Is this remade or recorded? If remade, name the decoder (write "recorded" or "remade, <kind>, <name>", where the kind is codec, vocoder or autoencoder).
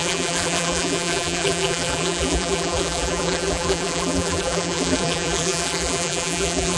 remade, vocoder, BigVGAN v2